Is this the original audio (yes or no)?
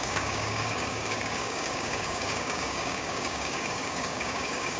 no